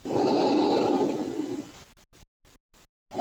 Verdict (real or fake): real